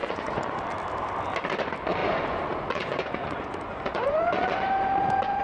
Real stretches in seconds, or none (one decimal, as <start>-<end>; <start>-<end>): 0.7-2.0